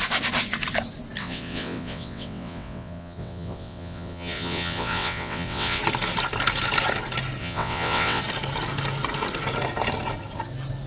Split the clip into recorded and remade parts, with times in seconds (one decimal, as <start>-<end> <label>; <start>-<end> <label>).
0.0-1.2 recorded; 1.2-5.8 remade; 5.8-7.4 recorded; 7.4-8.2 remade; 8.2-10.9 recorded